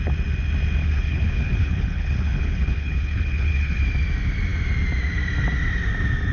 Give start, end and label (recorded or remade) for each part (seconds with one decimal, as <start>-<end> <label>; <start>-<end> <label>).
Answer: 0.0-0.8 recorded; 0.8-3.8 remade; 3.8-6.3 recorded